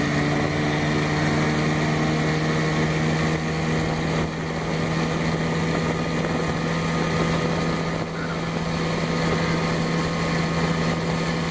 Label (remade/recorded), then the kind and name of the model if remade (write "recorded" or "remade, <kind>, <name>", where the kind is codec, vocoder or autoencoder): recorded